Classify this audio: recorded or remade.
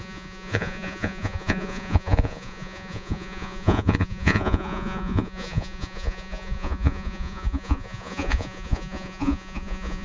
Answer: remade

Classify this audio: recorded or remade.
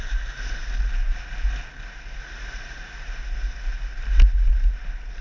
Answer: recorded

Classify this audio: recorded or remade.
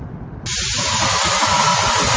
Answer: recorded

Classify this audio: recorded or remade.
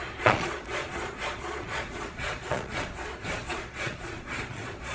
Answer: remade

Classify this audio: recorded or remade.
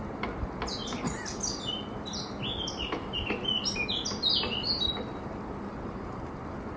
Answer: recorded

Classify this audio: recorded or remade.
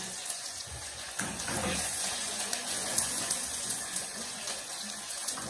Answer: remade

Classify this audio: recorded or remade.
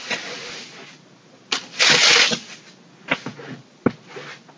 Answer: recorded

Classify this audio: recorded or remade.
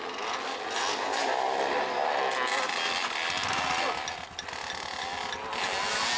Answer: recorded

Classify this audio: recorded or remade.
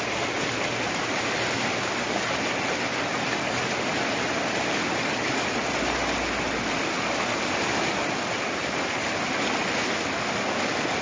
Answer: recorded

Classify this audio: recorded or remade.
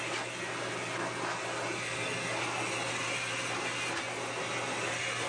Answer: recorded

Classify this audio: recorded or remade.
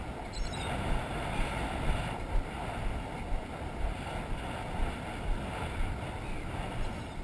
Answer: recorded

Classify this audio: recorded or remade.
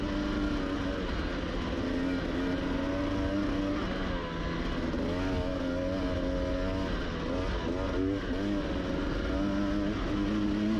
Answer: recorded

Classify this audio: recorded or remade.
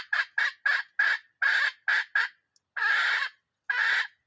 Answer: recorded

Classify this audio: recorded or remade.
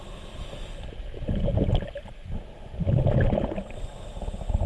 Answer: recorded